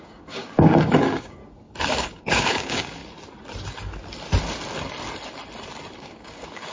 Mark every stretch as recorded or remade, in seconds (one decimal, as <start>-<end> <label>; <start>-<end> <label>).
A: 0.0-1.4 remade; 1.4-1.9 recorded; 1.9-3.0 remade; 3.0-6.0 recorded; 6.0-6.7 remade